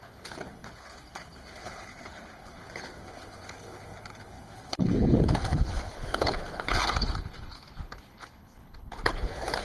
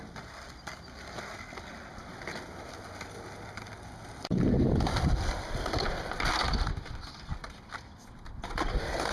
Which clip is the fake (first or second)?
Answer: first